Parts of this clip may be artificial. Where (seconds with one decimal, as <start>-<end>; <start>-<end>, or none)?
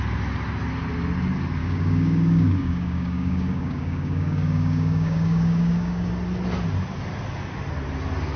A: 1.6-6.1